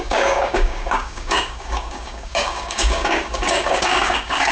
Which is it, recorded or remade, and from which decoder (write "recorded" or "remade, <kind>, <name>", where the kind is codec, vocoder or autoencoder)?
remade, codec, DAC